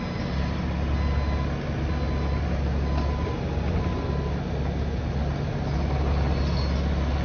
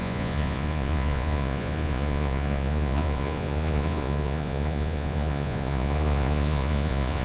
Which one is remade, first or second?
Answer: second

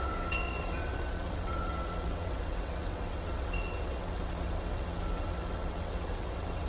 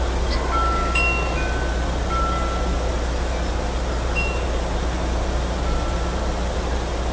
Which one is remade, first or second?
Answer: first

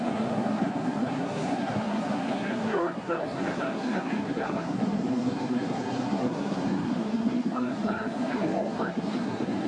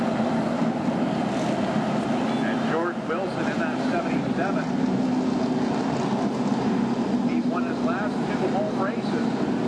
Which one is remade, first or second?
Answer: first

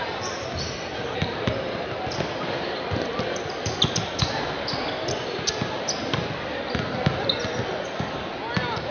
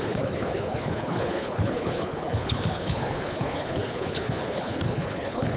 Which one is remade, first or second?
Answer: second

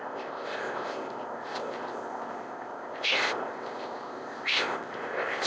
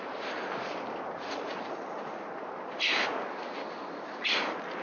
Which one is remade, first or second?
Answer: first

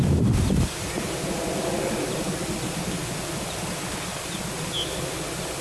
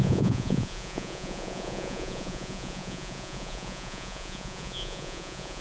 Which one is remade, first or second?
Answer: second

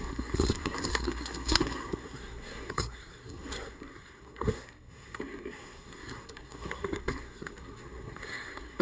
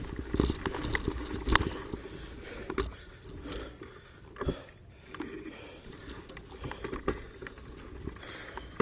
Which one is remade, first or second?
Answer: first